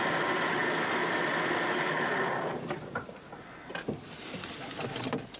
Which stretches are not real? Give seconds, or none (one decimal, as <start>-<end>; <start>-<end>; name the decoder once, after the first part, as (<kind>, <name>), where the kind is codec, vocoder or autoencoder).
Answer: none